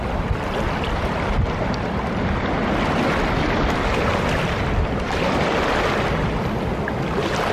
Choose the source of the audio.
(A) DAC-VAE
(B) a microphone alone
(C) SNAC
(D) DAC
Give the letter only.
B